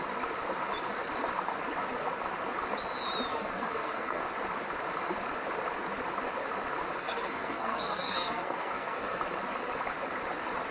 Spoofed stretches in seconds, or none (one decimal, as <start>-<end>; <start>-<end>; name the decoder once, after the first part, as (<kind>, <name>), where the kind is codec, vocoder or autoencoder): 3.3-4.2 (codec, SNAC); 7.0-9.2